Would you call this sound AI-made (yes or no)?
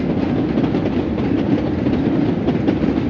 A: no